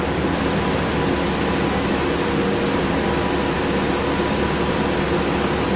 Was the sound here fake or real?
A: real